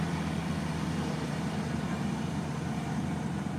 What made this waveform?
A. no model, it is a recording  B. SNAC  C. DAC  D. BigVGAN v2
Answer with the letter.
D